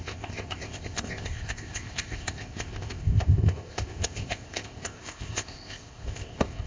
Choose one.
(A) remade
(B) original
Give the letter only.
A